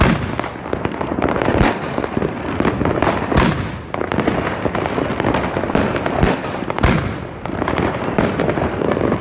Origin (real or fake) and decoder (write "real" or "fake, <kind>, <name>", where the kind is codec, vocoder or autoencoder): real